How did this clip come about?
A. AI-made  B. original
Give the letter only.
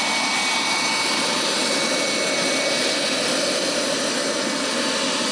B